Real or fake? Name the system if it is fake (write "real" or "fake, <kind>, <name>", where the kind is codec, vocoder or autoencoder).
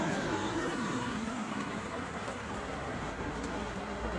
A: fake, codec, SNAC